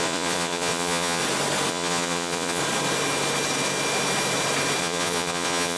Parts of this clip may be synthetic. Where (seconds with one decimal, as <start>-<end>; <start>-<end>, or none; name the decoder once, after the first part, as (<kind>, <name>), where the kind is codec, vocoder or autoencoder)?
0.0-1.2 (vocoder, Vocos); 1.7-2.6; 4.8-5.8

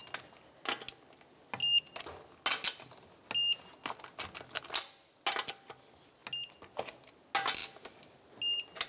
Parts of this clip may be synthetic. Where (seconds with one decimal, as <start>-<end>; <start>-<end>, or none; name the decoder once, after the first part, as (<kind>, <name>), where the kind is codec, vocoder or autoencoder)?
none

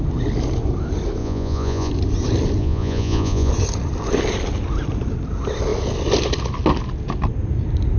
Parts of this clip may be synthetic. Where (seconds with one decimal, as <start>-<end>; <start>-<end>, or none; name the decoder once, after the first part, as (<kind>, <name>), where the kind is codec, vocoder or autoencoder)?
1.2-1.9 (vocoder, Vocos); 2.6-3.5

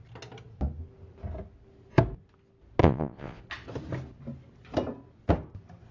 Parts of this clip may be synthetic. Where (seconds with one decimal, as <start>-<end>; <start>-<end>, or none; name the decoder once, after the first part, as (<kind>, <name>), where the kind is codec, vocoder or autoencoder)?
2.8-3.4 (vocoder, Vocos)

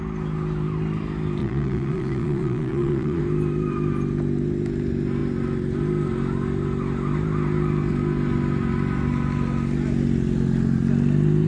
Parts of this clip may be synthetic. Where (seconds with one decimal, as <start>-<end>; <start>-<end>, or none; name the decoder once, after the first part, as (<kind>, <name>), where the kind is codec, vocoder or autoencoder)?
1.4-3.2 (vocoder, Vocos)